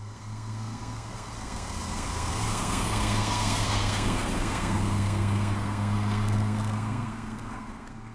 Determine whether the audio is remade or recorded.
remade